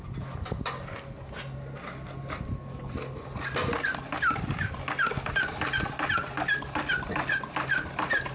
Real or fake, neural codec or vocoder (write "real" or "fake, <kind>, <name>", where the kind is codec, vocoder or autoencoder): real